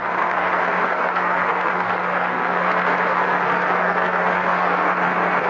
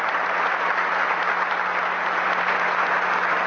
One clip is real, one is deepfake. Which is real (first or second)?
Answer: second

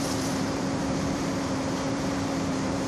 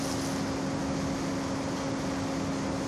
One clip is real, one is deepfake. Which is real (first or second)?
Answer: second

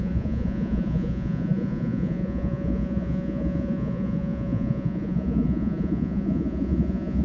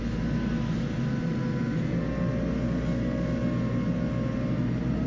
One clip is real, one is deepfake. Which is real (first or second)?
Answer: second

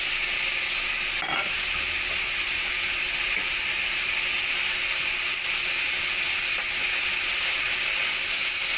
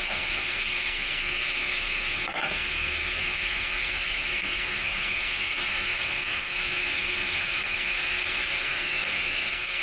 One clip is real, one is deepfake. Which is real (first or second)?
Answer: first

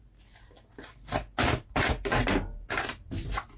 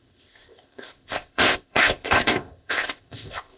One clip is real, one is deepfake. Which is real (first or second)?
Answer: first